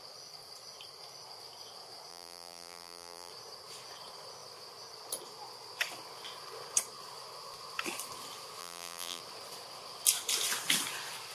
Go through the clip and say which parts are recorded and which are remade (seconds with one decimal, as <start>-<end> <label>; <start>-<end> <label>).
0.0-2.1 recorded; 2.1-3.3 remade; 3.3-8.6 recorded; 8.6-9.2 remade; 9.2-11.3 recorded